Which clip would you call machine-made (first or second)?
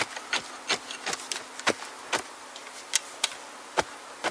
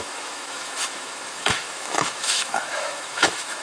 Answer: second